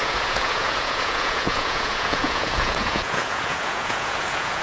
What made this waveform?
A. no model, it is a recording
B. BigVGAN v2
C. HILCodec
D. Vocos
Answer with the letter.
D